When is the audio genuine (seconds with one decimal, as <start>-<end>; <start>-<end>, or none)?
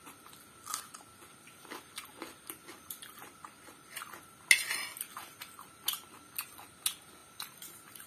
0.0-2.1; 3.7-7.2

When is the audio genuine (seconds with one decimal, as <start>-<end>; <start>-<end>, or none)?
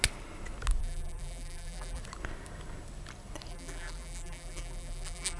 0.0-0.8; 2.0-3.5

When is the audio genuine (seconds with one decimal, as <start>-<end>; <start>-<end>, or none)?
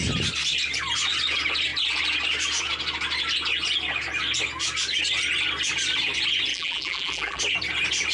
0.0-6.5; 7.4-8.1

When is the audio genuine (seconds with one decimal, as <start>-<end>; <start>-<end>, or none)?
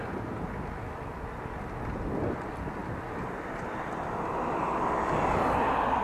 0.0-2.8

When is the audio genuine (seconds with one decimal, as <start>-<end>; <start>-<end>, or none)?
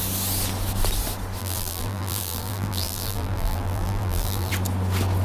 0.0-1.4; 4.5-5.2